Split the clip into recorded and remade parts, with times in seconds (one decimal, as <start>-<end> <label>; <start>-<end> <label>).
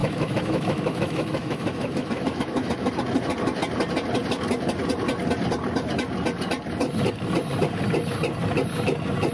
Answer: 0.0-2.9 remade; 2.9-9.3 recorded